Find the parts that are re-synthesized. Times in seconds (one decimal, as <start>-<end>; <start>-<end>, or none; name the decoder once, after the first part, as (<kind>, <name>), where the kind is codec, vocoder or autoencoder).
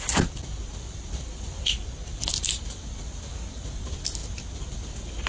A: 0.0-4.2 (vocoder, BigVGAN v2); 4.7-5.3